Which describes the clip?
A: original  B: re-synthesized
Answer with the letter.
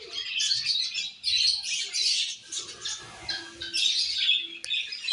A